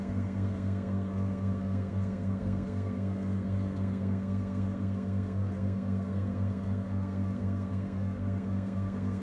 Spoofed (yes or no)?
yes